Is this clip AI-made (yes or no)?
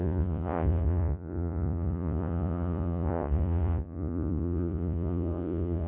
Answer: yes